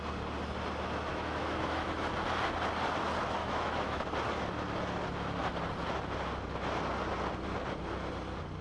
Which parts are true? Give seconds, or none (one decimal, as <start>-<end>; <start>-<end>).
0.0-1.1; 2.1-3.4; 4.0-8.6